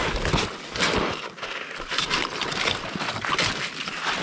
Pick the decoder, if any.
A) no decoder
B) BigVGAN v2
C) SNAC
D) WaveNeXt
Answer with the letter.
A